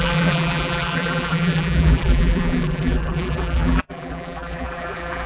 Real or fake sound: fake